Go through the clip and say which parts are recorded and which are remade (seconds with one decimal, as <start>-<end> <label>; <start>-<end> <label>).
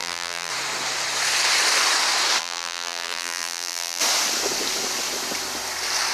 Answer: 0.0-0.5 remade; 0.5-2.4 recorded; 2.4-4.0 remade; 4.0-6.1 recorded